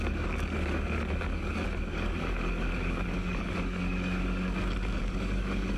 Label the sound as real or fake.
fake